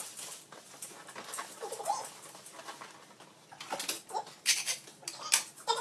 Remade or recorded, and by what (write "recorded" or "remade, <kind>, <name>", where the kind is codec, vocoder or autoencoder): recorded